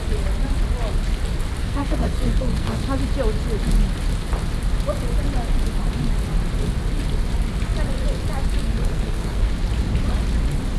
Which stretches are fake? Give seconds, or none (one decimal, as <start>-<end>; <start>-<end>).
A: 1.6-2.8; 8.6-9.5